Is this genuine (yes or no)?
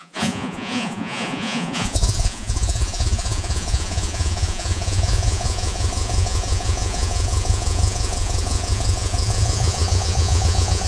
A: no